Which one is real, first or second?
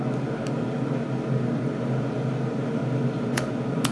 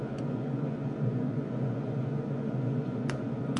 first